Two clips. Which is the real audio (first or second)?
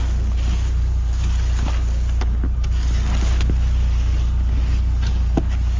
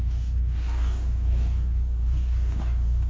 first